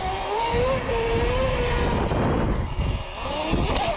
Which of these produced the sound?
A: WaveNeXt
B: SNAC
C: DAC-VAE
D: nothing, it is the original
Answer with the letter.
D